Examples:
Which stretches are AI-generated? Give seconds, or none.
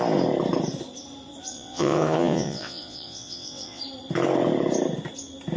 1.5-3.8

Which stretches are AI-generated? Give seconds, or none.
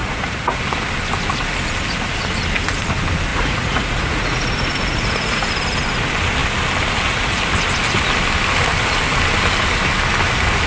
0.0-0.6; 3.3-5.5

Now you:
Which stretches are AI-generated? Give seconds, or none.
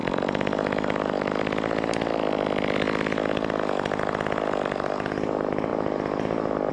none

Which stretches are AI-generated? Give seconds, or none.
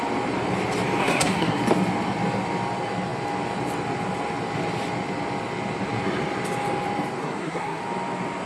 1.0-1.6; 7.2-7.8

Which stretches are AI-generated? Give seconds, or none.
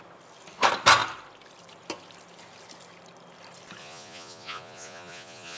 3.8-5.6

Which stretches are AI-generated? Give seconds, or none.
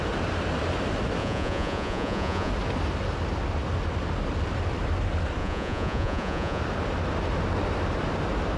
1.2-2.5; 5.4-6.6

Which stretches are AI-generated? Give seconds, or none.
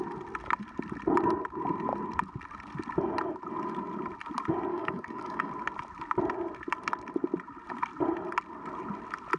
4.7-5.5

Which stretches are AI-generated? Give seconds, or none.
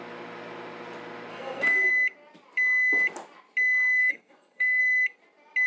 1.3-1.9; 4.0-4.8